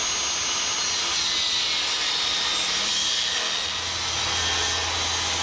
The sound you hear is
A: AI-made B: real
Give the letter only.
B